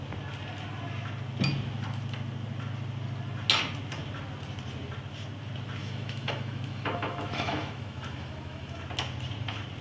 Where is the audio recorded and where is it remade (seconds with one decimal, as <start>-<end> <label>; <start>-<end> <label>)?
0.0-5.8 recorded; 5.8-8.8 remade; 8.8-9.8 recorded